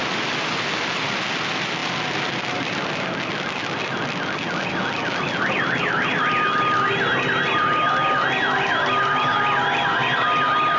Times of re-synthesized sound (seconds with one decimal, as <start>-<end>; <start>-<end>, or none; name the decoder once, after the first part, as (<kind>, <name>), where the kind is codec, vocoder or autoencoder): none